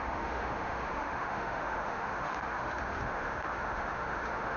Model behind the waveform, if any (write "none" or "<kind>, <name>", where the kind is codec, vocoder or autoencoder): autoencoder, DAC-VAE